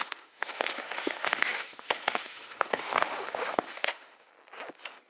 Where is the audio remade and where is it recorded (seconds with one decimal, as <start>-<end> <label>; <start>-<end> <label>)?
0.0-4.3 remade; 4.3-5.1 recorded